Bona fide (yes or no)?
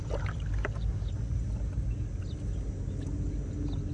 yes